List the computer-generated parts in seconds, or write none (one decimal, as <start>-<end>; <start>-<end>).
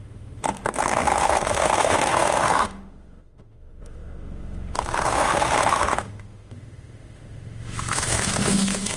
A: 0.0-9.0